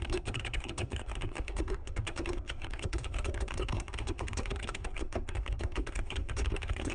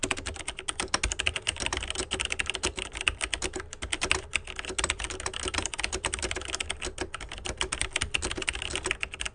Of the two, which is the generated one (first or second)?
first